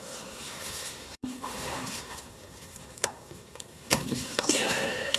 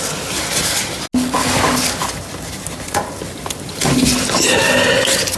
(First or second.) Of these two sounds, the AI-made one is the first